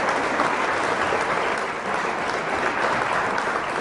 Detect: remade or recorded recorded